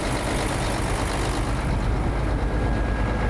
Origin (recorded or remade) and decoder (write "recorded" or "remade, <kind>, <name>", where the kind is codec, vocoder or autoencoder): recorded